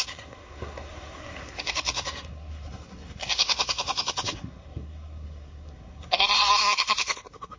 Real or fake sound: fake